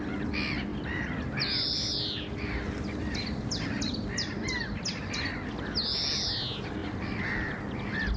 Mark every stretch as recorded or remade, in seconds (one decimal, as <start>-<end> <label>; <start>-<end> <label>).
0.0-0.7 recorded; 0.7-5.0 remade; 5.0-6.8 recorded; 6.8-7.6 remade; 7.6-8.2 recorded